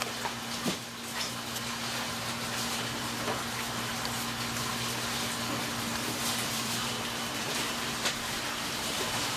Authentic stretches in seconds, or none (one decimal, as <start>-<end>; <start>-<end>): 0.0-5.9; 7.4-9.4